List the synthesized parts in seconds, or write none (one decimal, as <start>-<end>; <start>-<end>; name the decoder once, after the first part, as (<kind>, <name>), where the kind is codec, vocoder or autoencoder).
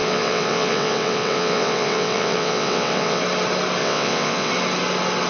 0.0-3.2 (vocoder, WaveNeXt); 3.8-4.5